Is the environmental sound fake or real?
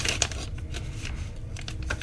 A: fake